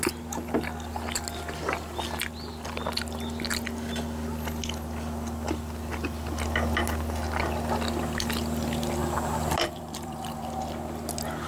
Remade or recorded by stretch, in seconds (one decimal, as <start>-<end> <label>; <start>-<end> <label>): 0.0-9.0 recorded; 9.0-10.4 remade; 10.4-11.5 recorded